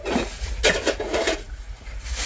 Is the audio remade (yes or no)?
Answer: yes